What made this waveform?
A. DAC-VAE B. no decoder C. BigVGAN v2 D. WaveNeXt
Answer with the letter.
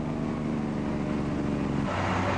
B